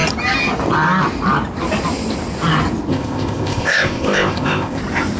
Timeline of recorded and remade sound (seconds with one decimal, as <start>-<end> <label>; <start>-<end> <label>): 0.0-2.9 recorded; 2.9-4.8 remade; 4.8-5.2 recorded